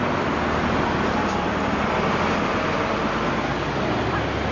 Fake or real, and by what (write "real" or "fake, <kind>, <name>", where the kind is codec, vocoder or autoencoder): real